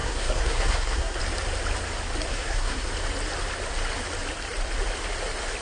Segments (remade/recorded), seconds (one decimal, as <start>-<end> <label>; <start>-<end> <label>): 0.0-1.2 remade; 1.2-2.3 recorded; 2.3-2.9 remade; 2.9-5.6 recorded